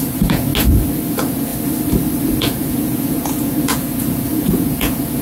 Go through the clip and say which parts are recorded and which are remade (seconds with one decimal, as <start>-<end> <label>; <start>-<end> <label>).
0.0-0.5 remade; 0.5-1.1 recorded; 1.1-1.5 remade; 1.5-2.4 recorded; 2.4-5.2 remade